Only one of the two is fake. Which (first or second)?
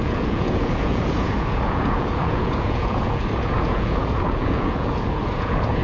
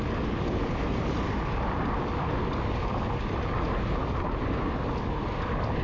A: first